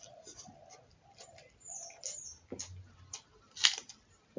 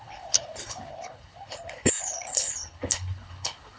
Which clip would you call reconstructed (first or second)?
second